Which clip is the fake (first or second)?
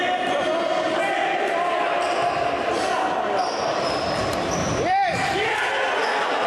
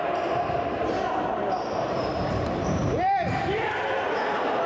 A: second